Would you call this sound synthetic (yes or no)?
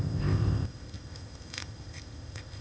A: yes